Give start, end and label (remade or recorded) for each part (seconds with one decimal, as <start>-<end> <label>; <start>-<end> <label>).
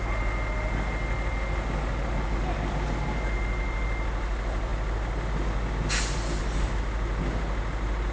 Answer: 0.0-8.1 recorded